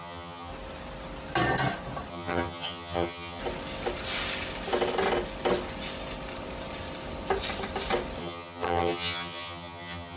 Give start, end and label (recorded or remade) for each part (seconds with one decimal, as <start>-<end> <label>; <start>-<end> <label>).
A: 0.0-0.5 remade; 0.5-2.1 recorded; 2.1-3.4 remade; 3.4-8.2 recorded; 8.2-10.2 remade